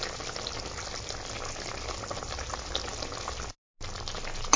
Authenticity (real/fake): real